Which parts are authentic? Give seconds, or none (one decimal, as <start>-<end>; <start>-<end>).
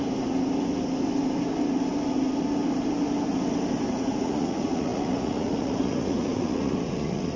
0.0-3.9